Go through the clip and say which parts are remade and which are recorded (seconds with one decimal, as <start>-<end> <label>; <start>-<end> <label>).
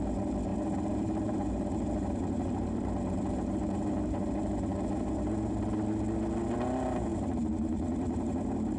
0.0-0.5 recorded; 0.5-5.6 remade; 5.6-7.1 recorded; 7.1-8.8 remade